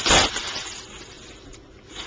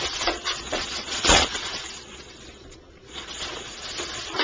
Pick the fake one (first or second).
second